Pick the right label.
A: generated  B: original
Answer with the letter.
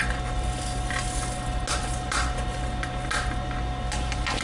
B